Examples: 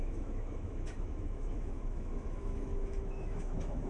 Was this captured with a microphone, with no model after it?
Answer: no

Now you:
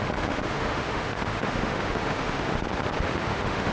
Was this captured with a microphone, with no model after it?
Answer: no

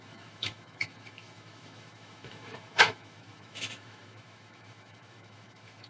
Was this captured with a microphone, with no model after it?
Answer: no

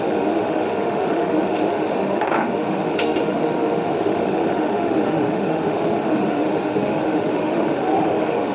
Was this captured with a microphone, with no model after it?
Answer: no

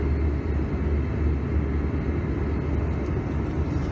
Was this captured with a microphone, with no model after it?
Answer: yes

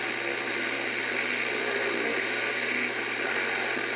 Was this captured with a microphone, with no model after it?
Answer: yes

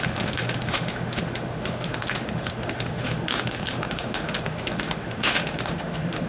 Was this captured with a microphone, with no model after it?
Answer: no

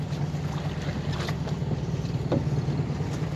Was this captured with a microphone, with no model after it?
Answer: yes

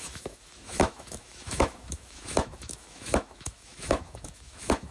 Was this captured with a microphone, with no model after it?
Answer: no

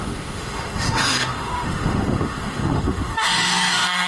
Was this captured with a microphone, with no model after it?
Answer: no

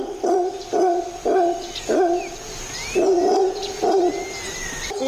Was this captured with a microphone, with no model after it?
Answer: yes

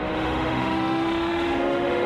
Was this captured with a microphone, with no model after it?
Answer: no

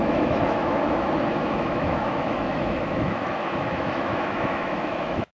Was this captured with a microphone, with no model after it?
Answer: no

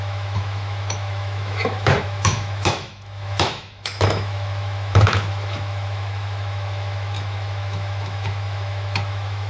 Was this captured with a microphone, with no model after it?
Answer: no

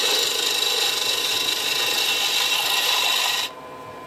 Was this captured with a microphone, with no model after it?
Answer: yes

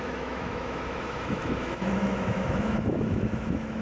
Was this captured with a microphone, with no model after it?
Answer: no